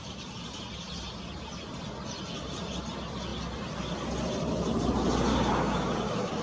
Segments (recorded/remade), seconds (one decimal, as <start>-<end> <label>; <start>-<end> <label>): 0.0-5.3 recorded; 5.3-6.4 remade